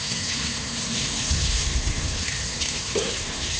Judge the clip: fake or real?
fake